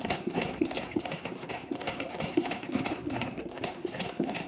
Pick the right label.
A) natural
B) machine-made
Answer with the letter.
B